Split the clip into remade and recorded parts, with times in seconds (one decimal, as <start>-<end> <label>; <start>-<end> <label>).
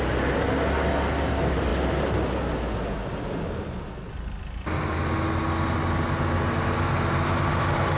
0.0-8.0 recorded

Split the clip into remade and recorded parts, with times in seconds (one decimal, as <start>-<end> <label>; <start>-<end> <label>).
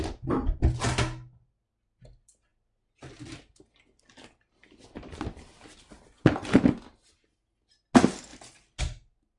0.0-9.4 recorded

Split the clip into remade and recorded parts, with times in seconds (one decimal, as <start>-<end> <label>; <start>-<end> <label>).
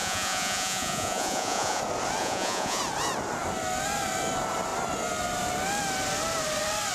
0.0-1.8 remade; 1.8-2.2 recorded; 2.2-2.8 remade; 2.8-6.9 recorded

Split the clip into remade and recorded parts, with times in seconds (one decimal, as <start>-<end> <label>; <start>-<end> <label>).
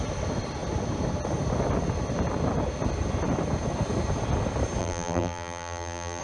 0.0-4.8 recorded; 4.8-6.2 remade